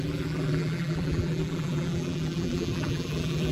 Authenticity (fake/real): fake